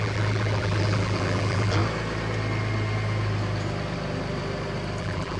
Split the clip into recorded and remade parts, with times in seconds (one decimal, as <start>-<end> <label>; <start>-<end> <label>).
0.0-1.8 remade; 1.8-5.0 recorded; 5.0-5.4 remade